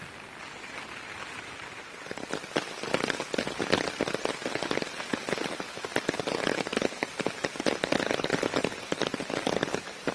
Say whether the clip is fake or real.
real